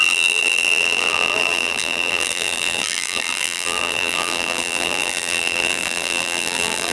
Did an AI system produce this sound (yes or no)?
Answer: yes